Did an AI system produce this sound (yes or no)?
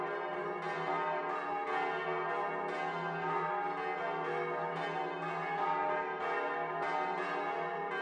no